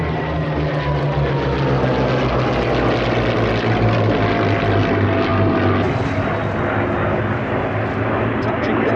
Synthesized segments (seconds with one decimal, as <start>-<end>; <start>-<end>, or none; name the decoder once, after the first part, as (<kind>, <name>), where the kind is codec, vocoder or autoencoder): none